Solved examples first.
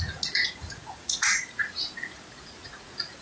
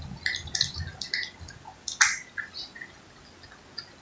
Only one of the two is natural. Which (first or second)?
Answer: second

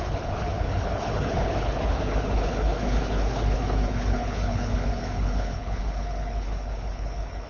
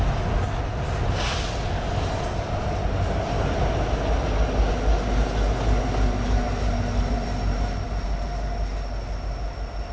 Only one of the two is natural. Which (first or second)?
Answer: second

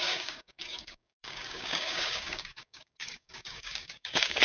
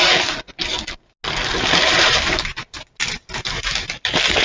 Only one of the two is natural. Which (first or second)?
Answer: second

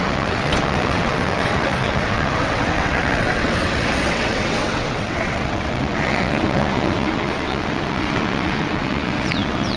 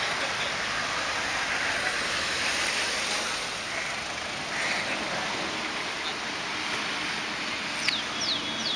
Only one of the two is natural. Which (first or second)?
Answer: second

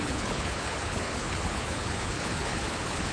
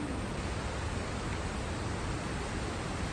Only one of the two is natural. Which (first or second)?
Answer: second